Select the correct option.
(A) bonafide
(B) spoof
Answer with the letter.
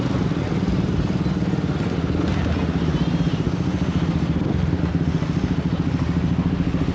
A